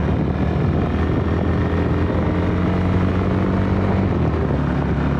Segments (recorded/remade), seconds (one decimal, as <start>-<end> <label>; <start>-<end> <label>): 0.0-5.2 recorded

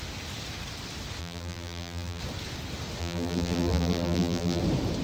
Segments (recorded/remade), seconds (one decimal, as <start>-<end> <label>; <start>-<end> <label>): 0.0-1.2 recorded; 1.2-2.2 remade; 2.2-3.0 recorded; 3.0-4.6 remade; 4.6-5.0 recorded

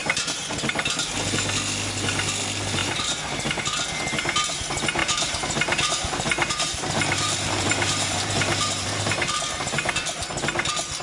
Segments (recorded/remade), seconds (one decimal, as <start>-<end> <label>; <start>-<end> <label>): 0.0-0.7 remade; 0.7-2.8 recorded; 2.8-3.6 remade; 3.6-5.0 recorded; 5.0-9.6 remade; 9.6-11.0 recorded